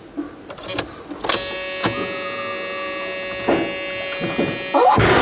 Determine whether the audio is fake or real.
real